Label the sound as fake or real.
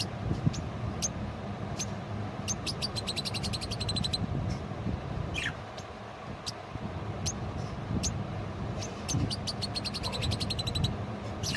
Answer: real